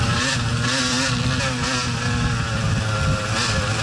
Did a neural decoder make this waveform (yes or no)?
no